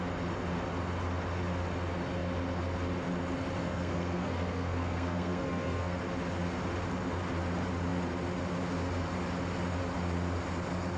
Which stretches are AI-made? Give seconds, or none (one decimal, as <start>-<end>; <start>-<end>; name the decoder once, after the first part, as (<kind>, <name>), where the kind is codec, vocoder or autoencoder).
3.6-6.0 (codec, SNAC)